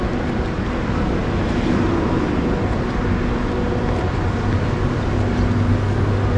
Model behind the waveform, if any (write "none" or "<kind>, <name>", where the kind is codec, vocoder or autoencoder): none